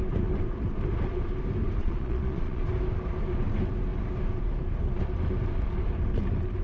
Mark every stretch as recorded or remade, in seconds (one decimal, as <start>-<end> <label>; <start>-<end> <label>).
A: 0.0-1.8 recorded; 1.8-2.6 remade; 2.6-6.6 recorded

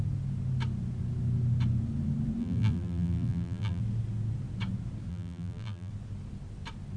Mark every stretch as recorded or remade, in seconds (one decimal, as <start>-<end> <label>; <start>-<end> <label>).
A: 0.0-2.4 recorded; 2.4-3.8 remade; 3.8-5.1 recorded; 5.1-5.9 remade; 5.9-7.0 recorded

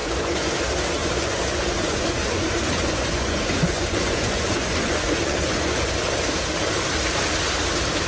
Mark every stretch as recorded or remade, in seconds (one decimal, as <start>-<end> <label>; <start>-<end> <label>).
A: 0.0-0.5 remade; 0.5-1.0 recorded; 1.0-5.9 remade; 5.9-8.1 recorded